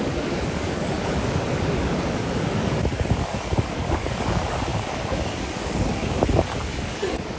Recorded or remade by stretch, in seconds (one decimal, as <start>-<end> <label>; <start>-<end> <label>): 0.0-7.4 remade